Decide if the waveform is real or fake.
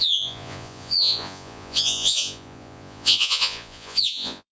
fake